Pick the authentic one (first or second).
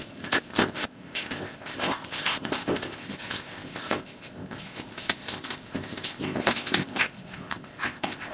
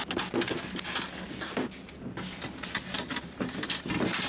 second